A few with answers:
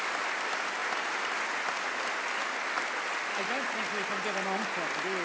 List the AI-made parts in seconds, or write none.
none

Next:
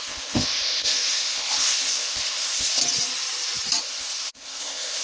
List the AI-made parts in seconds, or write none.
0.0-2.8 (codec, ZipCodec); 3.8-5.0

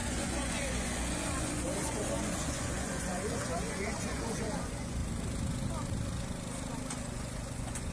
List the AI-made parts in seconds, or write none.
0.0-5.0 (vocoder, Vocos); 7.0-7.9

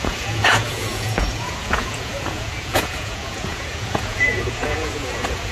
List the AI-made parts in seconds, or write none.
0.0-5.5 (vocoder, Vocos)

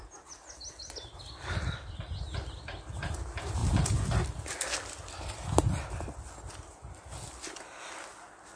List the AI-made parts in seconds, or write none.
none

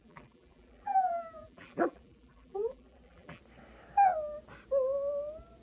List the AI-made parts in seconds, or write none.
0.0-3.4 (vocoder, BigVGAN v2)